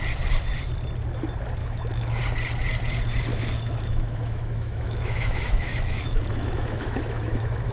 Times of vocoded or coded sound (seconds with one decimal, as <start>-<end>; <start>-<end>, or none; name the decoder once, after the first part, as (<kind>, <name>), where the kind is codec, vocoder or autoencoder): 1.6-2.2 (autoencoder, DAC-VAE); 3.3-7.7